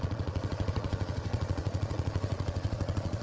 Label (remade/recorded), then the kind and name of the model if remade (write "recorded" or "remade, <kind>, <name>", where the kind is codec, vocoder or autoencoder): remade, vocoder, Vocos